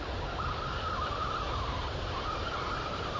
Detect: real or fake fake